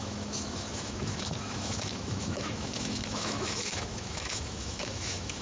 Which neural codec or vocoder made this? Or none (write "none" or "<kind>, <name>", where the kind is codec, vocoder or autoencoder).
autoencoder, DAC-VAE